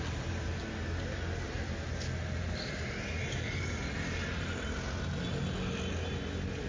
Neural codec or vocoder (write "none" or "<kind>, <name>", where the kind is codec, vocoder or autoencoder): none